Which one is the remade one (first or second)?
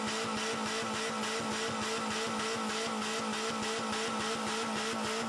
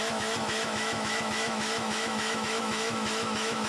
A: second